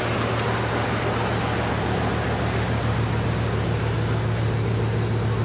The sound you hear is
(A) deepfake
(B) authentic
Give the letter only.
B